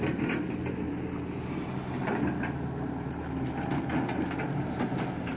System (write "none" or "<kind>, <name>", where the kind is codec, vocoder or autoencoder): none